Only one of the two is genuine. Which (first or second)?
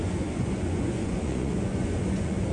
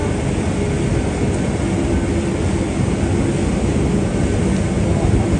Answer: second